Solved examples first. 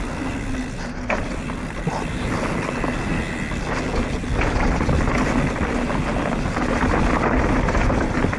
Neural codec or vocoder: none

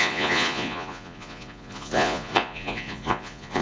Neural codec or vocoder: vocoder, Vocos